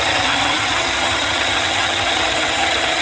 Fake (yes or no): yes